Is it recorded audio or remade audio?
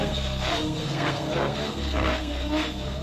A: remade